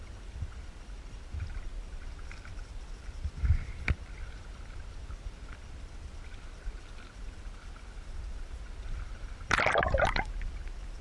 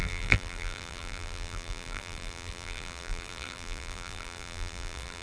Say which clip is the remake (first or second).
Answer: second